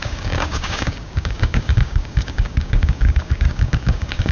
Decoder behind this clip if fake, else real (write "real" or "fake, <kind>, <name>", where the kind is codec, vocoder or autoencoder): fake, codec, DAC